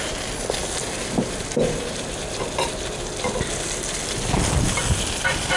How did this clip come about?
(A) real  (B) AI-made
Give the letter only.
A